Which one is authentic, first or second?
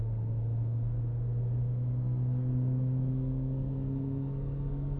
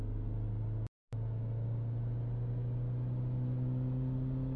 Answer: second